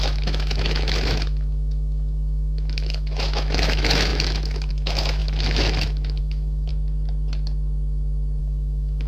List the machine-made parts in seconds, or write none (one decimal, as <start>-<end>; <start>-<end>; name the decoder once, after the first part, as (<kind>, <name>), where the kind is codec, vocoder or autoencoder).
0.0-6.7 (autoencoder, DAC-VAE); 8.4-9.1